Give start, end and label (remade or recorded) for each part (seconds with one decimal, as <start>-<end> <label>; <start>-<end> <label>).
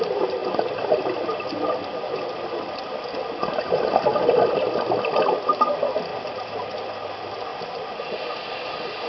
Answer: 0.0-9.1 recorded